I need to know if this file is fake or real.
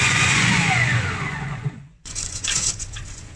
fake